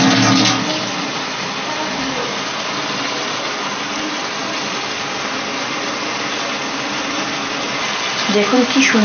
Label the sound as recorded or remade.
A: recorded